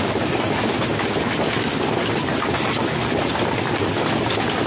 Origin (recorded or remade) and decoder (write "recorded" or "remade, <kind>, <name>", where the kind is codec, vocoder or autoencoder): recorded